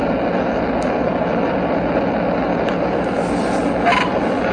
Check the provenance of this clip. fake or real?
real